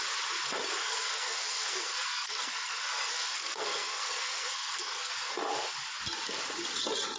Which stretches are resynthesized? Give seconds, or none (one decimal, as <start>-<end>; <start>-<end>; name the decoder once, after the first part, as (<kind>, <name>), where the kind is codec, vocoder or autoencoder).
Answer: 0.8-5.1 (codec, SNAC)